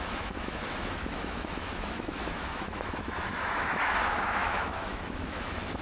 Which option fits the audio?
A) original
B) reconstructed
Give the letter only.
B